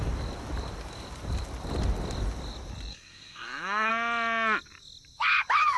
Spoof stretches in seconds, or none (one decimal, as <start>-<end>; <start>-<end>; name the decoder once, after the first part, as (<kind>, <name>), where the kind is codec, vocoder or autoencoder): 2.9-3.9 (codec, SNAC)